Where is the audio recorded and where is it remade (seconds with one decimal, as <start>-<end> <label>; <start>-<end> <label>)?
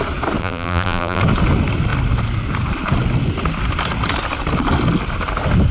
0.0-0.4 recorded; 0.4-1.2 remade; 1.2-5.7 recorded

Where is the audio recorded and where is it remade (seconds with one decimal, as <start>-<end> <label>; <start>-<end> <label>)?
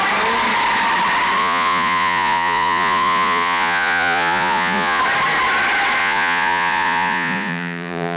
0.0-1.4 recorded; 1.4-5.0 remade; 5.0-6.0 recorded; 6.0-8.2 remade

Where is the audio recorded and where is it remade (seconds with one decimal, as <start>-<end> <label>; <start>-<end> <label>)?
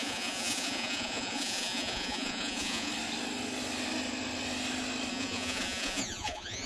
0.0-2.9 remade; 2.9-5.1 recorded; 5.1-6.7 remade